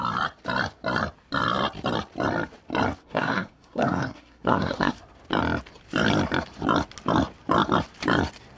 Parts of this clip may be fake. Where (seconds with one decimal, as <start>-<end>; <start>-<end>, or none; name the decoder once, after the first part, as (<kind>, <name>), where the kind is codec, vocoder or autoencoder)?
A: 3.0-5.0 (codec, SNAC)